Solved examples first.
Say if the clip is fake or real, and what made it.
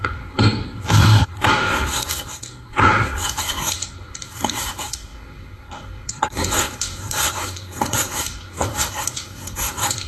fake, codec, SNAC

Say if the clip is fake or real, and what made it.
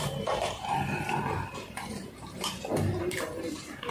fake, vocoder, BigVGAN v2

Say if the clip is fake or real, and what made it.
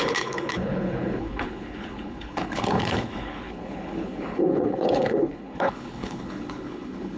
fake, codec, HILCodec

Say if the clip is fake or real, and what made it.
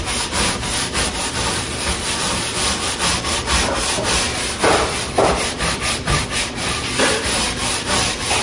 fake, vocoder, BigVGAN v2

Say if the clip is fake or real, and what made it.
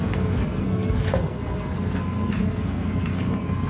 fake, codec, SNAC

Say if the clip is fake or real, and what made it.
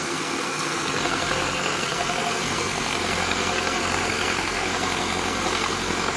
fake, codec, SNAC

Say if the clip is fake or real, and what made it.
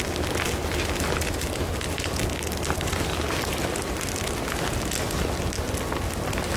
real